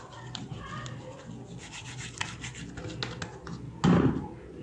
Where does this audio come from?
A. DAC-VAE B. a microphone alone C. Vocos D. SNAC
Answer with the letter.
B